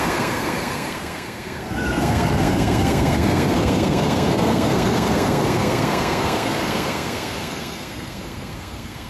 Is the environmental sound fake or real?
fake